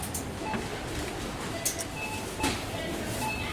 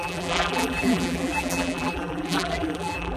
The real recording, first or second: first